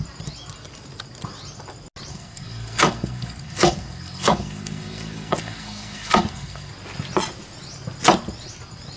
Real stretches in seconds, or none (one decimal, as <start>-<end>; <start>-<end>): 0.0-2.1; 6.7-9.0